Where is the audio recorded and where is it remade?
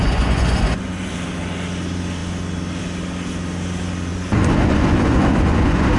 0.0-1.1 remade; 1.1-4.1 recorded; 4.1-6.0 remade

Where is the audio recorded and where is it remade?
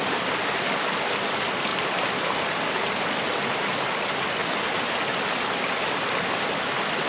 0.0-7.1 recorded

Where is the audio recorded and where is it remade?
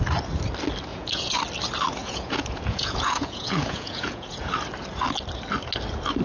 0.0-0.9 recorded; 0.9-1.4 remade; 1.4-2.0 recorded; 2.0-4.5 remade; 4.5-6.2 recorded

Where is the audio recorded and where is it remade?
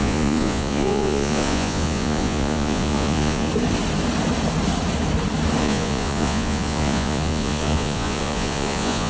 0.0-3.5 remade; 3.5-5.6 recorded; 5.6-9.1 remade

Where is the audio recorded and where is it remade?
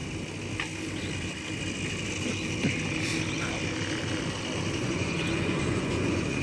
0.0-4.8 recorded; 4.8-6.4 remade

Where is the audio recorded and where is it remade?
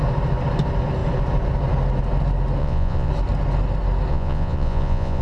0.0-2.6 recorded; 2.6-3.1 remade; 3.1-4.1 recorded; 4.1-5.2 remade